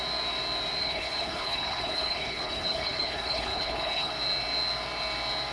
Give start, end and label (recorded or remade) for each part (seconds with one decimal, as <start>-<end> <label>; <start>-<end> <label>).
0.0-0.8 recorded; 0.8-4.1 remade; 4.1-5.5 recorded